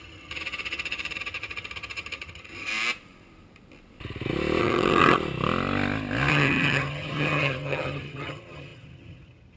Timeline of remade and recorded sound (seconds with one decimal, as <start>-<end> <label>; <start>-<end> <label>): 0.0-2.7 remade; 2.7-4.6 recorded; 4.6-5.2 remade; 5.2-6.3 recorded; 6.3-9.6 remade